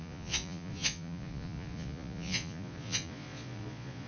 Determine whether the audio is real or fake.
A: fake